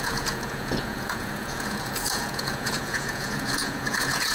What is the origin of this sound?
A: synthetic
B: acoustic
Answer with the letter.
A